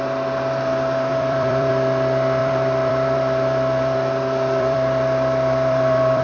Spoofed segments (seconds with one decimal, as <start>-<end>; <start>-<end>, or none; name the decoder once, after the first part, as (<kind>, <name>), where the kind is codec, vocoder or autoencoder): 1.1-1.7 (vocoder, BigVGAN v2); 2.4-6.2

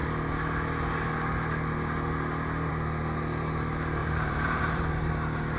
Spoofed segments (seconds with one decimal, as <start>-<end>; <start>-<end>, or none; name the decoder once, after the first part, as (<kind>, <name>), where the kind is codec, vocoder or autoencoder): 4.0-5.1 (vocoder, BigVGAN v2)

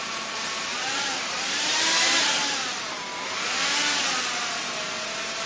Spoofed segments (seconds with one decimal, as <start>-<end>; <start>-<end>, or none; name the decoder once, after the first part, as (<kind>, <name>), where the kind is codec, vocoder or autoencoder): 0.7-1.8 (vocoder, BigVGAN v2); 2.4-3.2

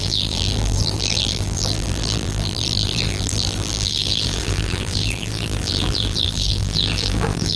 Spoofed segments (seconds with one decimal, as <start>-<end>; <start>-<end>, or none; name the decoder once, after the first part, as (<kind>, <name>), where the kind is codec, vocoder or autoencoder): 0.0-7.6 (vocoder, BigVGAN v2)

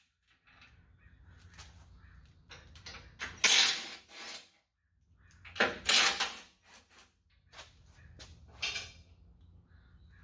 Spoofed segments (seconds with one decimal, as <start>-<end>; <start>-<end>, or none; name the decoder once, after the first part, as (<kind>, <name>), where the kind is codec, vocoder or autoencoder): none

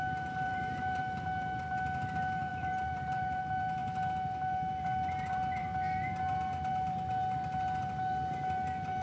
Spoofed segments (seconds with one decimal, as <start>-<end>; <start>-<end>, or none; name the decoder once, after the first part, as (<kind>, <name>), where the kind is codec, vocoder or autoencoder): 0.5-1.0 (vocoder, BigVGAN v2); 2.5-3.4